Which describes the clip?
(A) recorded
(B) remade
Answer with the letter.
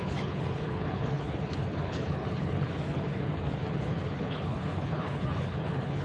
B